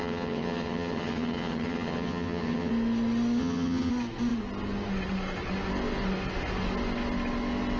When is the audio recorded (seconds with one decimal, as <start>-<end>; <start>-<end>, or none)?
2.7-3.4; 3.9-7.8